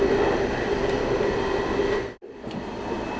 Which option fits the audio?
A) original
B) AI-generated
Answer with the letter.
A